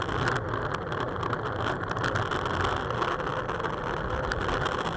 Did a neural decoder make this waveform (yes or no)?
no